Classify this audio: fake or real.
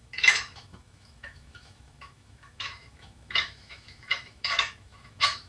fake